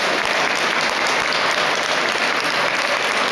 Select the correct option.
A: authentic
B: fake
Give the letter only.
A